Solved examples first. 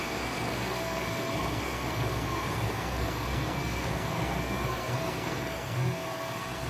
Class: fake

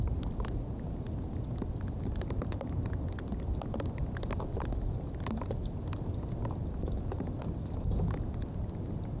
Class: real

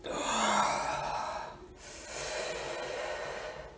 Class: real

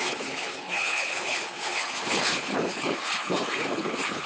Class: fake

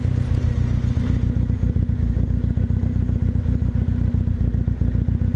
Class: real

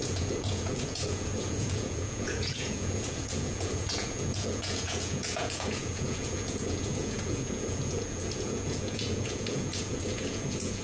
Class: fake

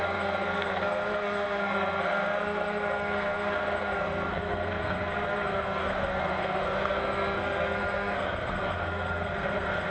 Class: fake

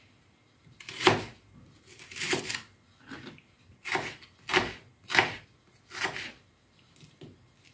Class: real